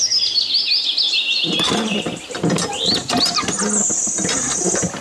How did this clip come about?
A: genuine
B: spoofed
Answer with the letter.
A